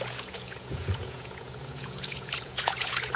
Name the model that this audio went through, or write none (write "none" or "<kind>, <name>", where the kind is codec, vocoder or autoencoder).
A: vocoder, Vocos